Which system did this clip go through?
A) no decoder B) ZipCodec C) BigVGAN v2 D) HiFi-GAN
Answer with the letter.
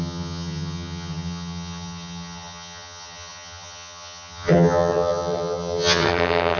D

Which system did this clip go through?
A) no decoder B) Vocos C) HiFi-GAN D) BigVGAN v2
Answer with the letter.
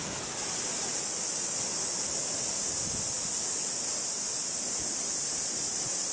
A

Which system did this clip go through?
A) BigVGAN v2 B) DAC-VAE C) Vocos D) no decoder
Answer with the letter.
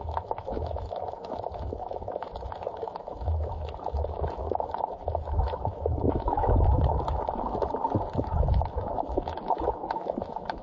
B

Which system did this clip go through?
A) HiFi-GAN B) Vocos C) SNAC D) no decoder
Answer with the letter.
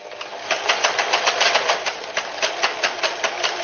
D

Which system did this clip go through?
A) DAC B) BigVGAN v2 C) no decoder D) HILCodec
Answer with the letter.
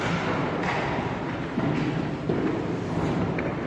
C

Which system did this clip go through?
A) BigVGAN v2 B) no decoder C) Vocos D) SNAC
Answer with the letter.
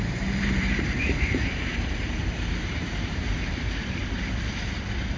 A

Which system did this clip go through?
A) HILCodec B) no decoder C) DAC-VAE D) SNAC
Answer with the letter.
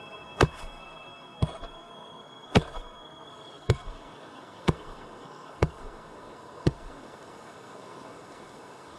D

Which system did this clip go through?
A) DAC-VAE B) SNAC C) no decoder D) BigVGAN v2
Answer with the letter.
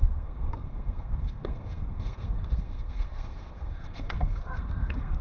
B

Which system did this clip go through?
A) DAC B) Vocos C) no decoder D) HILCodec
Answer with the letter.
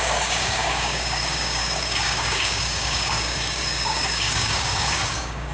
A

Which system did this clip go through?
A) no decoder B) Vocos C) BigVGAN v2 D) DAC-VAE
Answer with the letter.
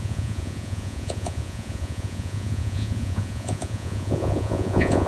B